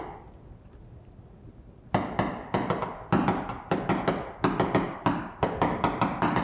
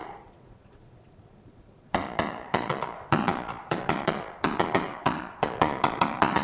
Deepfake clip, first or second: second